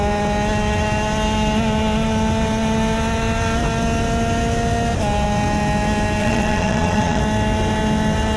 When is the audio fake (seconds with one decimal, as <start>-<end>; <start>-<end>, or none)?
6.2-7.2